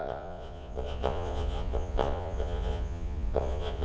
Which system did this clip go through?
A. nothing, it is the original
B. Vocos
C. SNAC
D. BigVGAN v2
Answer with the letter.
B